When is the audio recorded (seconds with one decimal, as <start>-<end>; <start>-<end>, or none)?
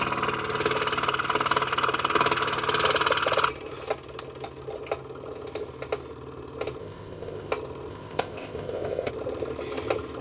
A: 0.0-6.8; 7.5-7.9; 9.1-10.2